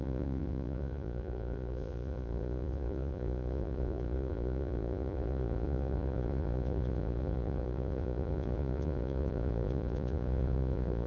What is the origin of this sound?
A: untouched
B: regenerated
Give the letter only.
B